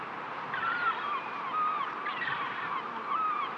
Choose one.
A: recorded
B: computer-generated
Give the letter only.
B